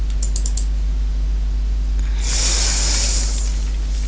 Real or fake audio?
real